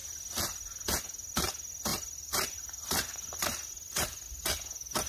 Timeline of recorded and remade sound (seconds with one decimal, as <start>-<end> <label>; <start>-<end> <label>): 0.0-1.9 recorded; 1.9-5.1 remade